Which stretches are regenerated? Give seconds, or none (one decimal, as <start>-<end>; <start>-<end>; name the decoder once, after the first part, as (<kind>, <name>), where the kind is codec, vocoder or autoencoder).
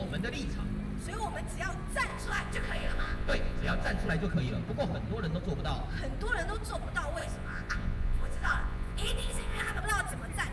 2.1-4.1 (vocoder, Vocos); 7.2-9.8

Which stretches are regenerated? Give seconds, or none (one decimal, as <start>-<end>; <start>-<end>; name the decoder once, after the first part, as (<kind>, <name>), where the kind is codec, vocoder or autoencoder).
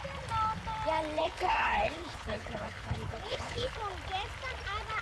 1.2-3.7 (codec, HILCodec)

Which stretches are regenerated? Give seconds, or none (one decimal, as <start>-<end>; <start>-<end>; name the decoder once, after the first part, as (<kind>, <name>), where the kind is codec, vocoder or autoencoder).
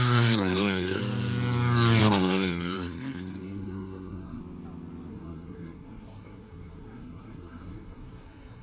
0.0-1.0 (codec, SNAC); 2.0-4.4; 5.1-8.6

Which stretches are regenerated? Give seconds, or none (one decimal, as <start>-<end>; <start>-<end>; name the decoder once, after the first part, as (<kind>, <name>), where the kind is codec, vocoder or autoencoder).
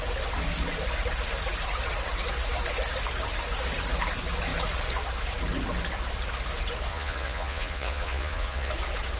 6.9-8.7 (vocoder, Vocos)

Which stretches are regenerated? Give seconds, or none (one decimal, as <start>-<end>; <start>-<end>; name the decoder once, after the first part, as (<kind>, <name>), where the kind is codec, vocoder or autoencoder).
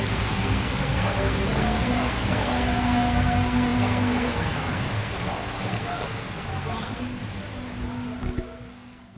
0.0-7.2 (codec, SNAC); 8.2-9.2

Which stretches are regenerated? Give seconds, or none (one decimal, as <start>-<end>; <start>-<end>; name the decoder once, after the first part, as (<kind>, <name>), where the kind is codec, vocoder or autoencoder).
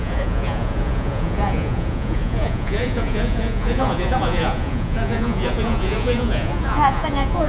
0.0-7.5 (vocoder, Vocos)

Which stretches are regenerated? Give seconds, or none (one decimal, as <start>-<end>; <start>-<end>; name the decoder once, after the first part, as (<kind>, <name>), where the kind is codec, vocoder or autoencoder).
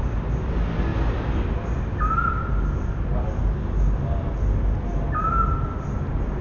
none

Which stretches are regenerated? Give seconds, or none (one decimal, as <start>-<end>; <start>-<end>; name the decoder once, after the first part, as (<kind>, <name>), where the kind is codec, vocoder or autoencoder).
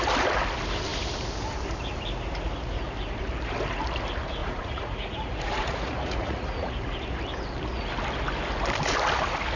4.4-6.7 (vocoder, Vocos)